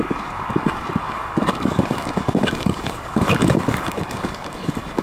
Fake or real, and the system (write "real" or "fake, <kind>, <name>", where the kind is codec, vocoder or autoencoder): fake, codec, DAC